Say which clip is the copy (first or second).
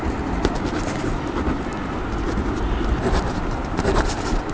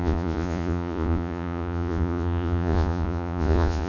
second